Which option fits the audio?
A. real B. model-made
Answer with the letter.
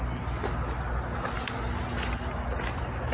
A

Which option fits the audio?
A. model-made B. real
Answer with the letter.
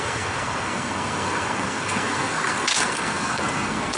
A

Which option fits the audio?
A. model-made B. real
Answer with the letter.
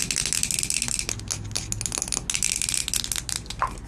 B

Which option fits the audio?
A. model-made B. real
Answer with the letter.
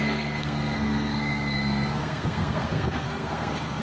A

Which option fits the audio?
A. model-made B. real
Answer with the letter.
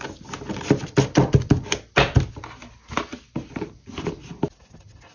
B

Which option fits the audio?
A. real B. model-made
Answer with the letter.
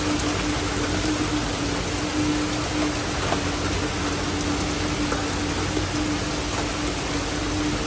A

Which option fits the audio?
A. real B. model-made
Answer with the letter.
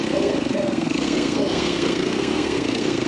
B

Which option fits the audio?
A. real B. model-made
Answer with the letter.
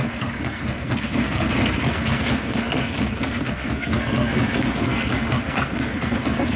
B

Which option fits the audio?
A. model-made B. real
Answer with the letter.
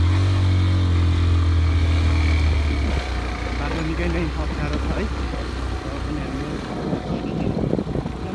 B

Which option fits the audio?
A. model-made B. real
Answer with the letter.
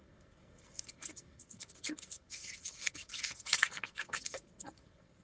A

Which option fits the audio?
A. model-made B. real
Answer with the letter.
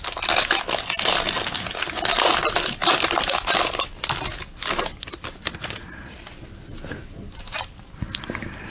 B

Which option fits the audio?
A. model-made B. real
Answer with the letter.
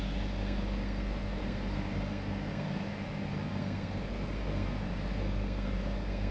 A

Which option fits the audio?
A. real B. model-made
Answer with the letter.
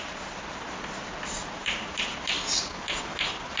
A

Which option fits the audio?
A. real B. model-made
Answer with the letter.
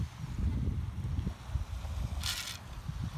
A